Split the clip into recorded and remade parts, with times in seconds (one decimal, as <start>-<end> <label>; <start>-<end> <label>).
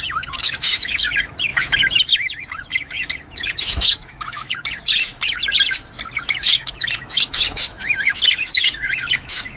0.0-5.4 remade; 5.4-6.2 recorded; 6.2-9.6 remade